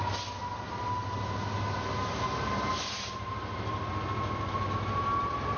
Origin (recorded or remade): recorded